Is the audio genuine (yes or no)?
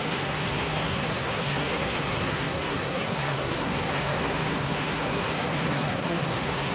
no